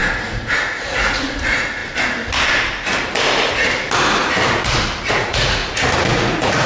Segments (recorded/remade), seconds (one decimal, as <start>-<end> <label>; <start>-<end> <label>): 0.0-1.8 remade; 1.8-5.1 recorded; 5.1-5.6 remade; 5.6-6.1 recorded; 6.1-6.7 remade